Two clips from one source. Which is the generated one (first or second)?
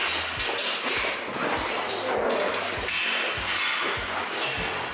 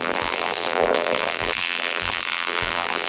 second